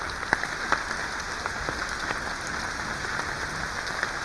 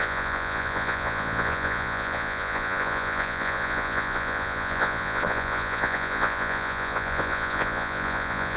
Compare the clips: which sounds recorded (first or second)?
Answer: first